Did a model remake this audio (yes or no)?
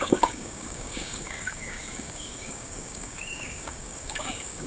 yes